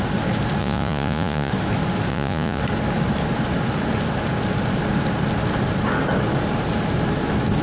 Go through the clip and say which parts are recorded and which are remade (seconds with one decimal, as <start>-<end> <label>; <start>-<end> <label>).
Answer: 0.0-0.6 recorded; 0.6-1.5 remade; 1.5-2.1 recorded; 2.1-2.6 remade; 2.6-7.6 recorded